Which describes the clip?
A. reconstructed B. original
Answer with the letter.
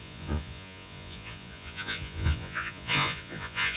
A